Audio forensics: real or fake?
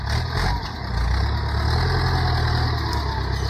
real